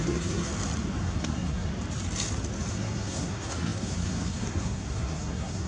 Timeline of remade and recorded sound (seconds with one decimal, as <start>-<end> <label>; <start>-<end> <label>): 0.0-0.5 remade; 0.5-1.0 recorded; 1.0-1.7 remade; 1.7-2.7 recorded; 2.7-5.7 remade